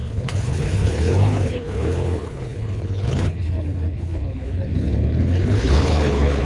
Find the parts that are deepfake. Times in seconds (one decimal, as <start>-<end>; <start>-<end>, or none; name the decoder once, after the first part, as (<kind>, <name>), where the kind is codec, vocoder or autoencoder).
0.0-6.4 (codec, HILCodec)

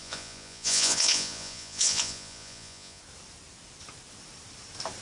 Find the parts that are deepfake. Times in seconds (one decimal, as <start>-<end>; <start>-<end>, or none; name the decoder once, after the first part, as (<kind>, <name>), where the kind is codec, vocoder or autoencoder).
0.0-3.0 (vocoder, Vocos)

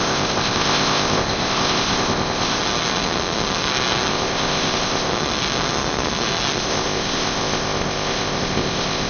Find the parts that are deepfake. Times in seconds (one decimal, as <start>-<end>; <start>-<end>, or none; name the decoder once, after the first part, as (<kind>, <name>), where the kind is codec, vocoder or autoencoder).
0.0-2.6 (codec, ZipCodec); 4.1-5.1; 6.6-9.1

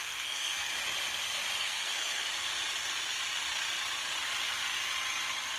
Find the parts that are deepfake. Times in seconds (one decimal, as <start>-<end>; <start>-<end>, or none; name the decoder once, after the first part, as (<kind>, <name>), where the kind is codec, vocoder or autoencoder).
0.0-0.7 (codec, SNAC); 1.6-2.2

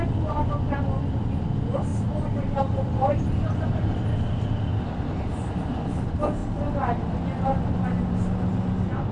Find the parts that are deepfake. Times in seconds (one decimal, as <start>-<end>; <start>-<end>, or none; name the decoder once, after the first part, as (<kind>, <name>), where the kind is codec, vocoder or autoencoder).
1.9-3.9 (vocoder, BigVGAN v2); 4.7-5.5

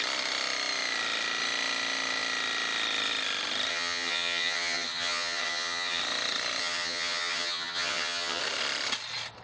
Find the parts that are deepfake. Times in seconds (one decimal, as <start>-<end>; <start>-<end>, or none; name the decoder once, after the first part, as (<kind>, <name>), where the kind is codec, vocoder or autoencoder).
3.7-6.0 (vocoder, HiFi-GAN); 6.6-8.4